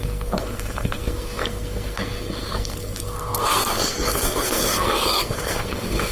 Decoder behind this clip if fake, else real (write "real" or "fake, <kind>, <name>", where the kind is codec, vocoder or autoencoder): fake, codec, SNAC